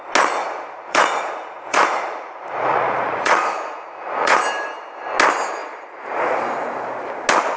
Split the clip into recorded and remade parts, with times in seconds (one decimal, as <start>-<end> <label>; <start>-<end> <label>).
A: 0.0-0.4 recorded; 0.4-4.4 remade; 4.4-7.6 recorded

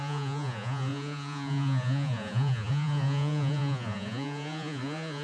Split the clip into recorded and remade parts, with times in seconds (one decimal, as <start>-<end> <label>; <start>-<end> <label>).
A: 0.0-5.2 remade

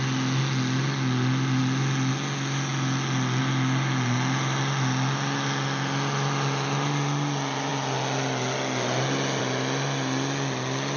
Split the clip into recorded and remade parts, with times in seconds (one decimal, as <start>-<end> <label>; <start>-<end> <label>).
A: 0.0-11.0 recorded

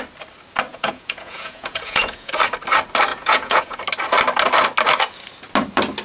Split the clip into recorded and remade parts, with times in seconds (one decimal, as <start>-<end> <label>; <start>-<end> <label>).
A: 0.0-0.7 recorded; 0.7-2.3 remade; 2.3-3.1 recorded; 3.1-3.8 remade; 3.8-6.0 recorded

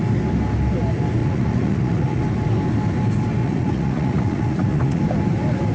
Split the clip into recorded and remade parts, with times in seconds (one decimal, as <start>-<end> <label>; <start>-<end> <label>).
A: 0.0-1.2 recorded; 1.2-2.2 remade; 2.2-3.4 recorded; 3.4-5.0 remade; 5.0-5.7 recorded

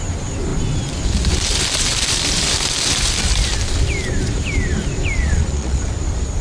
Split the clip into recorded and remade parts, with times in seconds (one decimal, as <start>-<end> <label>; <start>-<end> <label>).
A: 0.0-5.2 recorded; 5.2-5.9 remade; 5.9-6.4 recorded